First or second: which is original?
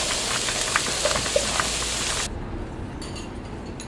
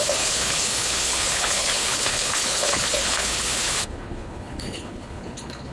first